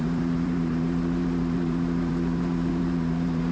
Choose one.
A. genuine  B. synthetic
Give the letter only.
B